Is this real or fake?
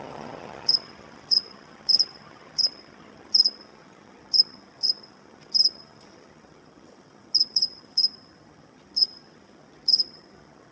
fake